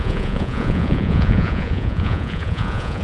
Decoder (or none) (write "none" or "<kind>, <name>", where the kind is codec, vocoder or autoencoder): vocoder, Vocos